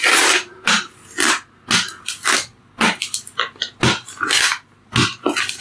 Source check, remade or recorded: recorded